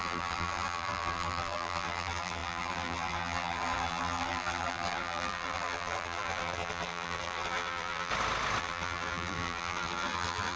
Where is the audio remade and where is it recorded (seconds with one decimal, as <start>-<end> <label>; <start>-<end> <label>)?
0.0-8.1 remade; 8.1-8.6 recorded; 8.6-10.6 remade